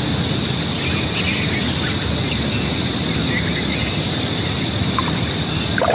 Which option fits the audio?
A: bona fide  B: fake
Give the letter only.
A